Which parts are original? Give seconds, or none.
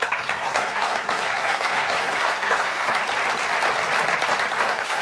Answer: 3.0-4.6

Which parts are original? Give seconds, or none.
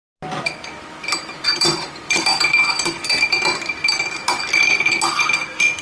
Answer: 0.0-0.9; 4.4-5.8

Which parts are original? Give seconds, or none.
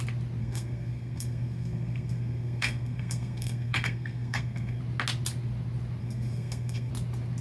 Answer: 0.0-0.4; 4.8-6.0; 6.9-7.4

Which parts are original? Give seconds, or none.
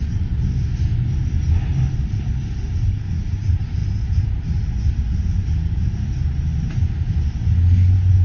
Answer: 0.0-2.8; 3.3-8.2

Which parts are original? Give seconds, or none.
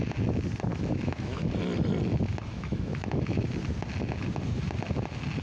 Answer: 0.0-0.7; 1.5-2.5; 3.5-5.4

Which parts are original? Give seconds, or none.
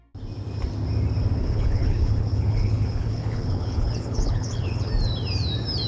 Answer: 0.0-1.4; 4.9-5.9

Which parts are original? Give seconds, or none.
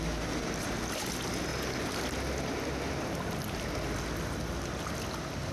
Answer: 0.0-5.5